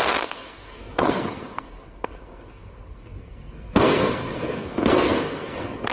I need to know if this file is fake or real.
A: fake